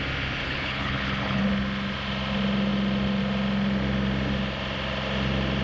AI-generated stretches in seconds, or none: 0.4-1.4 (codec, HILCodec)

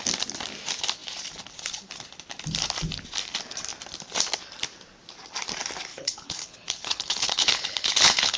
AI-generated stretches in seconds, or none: 5.9-8.4 (codec, HILCodec)

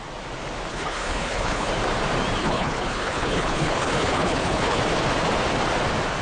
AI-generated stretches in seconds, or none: 0.7-1.7 (codec, HILCodec); 2.4-4.8

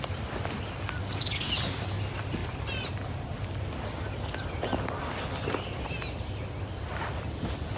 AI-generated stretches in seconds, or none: none

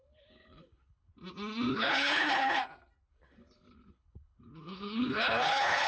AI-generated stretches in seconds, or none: 0.0-1.1 (codec, HILCodec); 1.7-2.6; 3.1-5.9

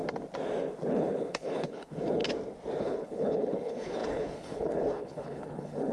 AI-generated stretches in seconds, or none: 0.9-2.2 (codec, HILCodec); 2.8-5.9

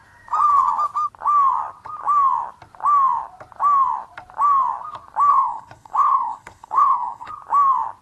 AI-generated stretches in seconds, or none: 5.3-7.3 (codec, HILCodec)

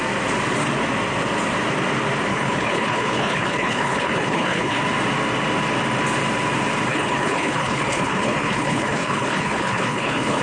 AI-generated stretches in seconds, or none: 2.3-4.8 (codec, HILCodec); 6.9-10.4